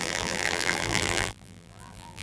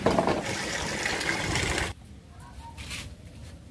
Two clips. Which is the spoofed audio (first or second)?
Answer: first